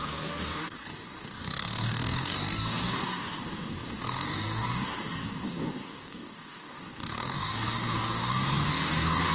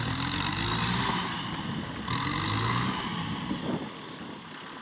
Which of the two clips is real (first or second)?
second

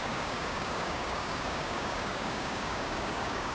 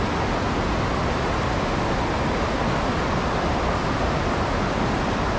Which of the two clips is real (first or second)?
second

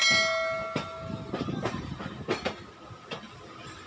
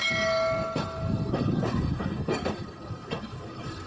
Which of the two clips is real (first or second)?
first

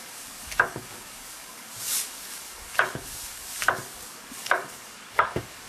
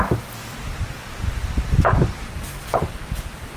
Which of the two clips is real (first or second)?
second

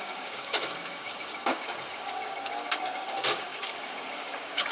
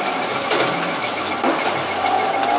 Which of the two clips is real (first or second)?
second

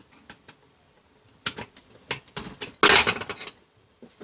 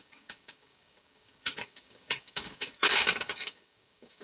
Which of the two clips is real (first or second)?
first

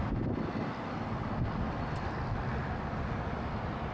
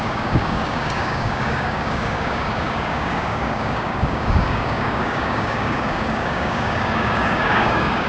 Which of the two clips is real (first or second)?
first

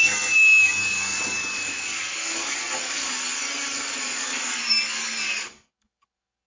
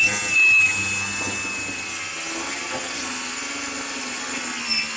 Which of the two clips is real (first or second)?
second